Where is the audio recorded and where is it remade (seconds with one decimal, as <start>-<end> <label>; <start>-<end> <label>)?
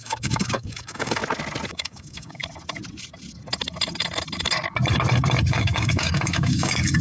0.0-1.2 remade; 1.2-1.7 recorded; 1.7-2.4 remade; 2.4-5.5 recorded; 5.5-7.0 remade